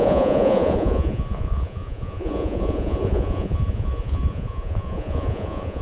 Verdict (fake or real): fake